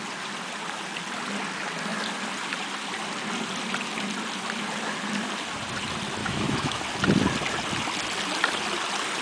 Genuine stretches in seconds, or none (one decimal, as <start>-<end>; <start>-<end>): 0.0-6.2; 6.8-9.2